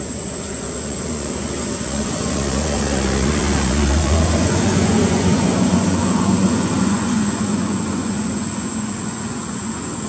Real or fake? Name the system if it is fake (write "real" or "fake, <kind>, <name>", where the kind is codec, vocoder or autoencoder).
fake, vocoder, Vocos